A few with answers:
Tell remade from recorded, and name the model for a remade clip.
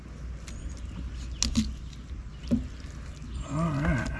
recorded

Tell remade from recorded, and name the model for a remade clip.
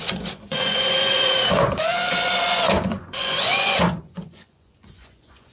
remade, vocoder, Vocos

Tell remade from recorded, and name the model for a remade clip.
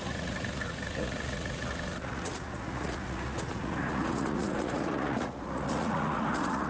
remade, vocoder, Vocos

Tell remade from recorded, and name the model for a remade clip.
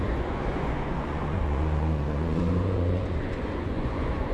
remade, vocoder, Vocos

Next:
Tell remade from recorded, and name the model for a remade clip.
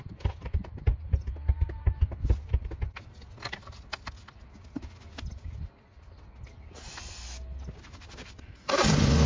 recorded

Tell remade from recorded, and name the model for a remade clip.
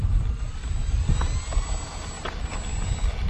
recorded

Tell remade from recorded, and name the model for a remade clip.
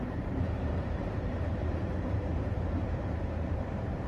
remade, vocoder, BigVGAN v2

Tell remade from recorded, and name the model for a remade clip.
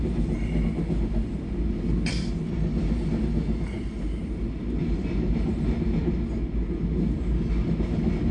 recorded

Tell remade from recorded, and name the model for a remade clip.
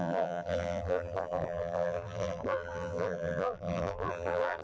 remade, vocoder, BigVGAN v2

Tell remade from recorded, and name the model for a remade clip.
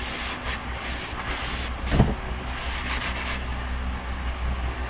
recorded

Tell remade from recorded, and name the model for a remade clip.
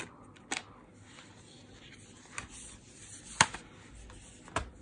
recorded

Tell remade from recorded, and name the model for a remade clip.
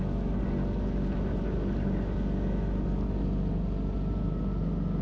recorded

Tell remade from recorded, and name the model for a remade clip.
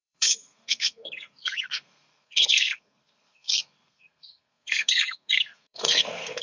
remade, codec, SNAC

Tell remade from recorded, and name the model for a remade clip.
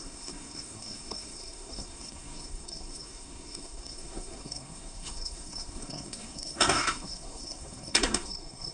remade, codec, SNAC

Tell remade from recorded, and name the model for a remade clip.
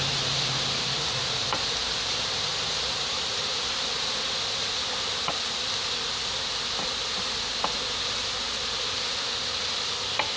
recorded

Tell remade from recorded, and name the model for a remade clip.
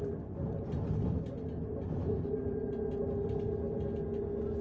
recorded